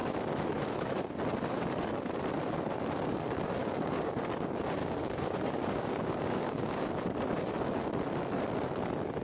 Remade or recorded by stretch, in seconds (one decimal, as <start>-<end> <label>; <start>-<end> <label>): 0.0-3.6 recorded; 3.6-4.2 remade; 4.2-4.8 recorded; 4.8-6.9 remade; 6.9-9.2 recorded